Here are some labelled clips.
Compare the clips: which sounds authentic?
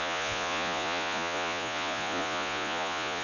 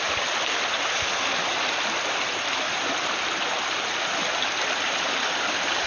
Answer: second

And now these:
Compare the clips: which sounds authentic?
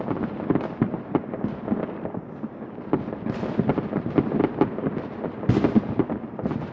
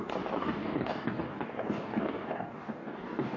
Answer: first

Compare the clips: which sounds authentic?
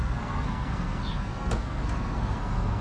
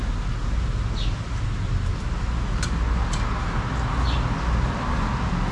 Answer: second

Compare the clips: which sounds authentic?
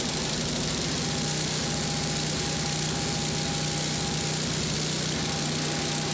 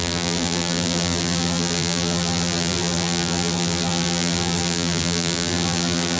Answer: first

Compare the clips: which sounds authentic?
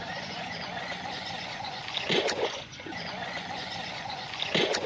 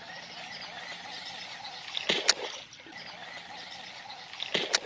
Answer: second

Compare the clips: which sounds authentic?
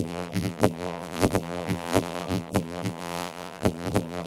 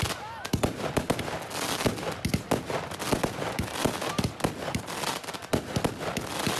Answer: second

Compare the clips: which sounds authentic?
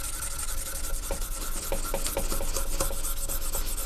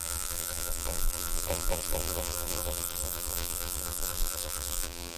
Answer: first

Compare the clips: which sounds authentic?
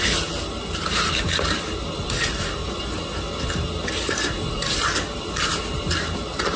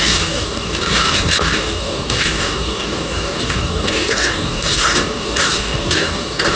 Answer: first